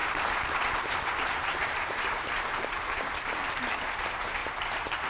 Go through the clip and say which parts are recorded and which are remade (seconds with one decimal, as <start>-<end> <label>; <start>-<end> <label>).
0.0-3.1 remade; 3.1-4.4 recorded; 4.4-5.1 remade